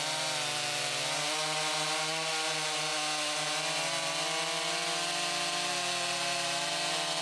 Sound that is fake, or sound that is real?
real